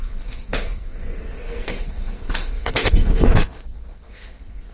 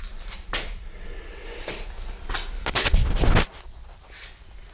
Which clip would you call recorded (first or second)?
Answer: second